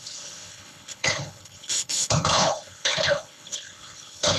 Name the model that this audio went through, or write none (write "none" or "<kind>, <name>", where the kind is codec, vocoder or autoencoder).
codec, HILCodec